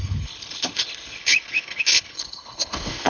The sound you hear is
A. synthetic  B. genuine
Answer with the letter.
A